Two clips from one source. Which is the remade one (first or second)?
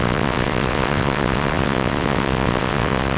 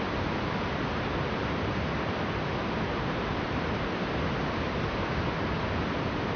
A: first